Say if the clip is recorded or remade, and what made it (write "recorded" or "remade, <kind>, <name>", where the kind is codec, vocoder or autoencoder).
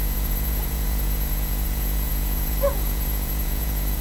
remade, vocoder, Vocos